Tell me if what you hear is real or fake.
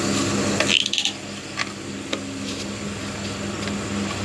real